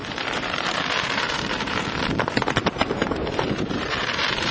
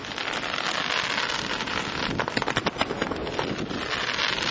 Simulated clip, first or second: first